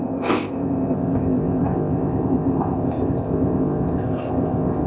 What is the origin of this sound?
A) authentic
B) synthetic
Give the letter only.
B